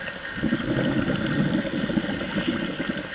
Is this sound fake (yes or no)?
no